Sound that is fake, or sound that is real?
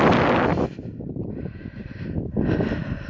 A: real